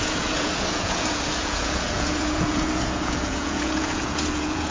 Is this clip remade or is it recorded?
remade